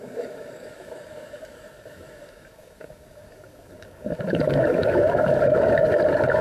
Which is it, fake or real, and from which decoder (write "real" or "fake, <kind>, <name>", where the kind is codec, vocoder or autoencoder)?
fake, codec, DAC